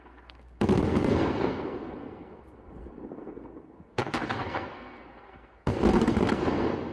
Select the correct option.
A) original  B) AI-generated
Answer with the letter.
B